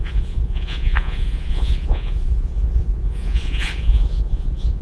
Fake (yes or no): yes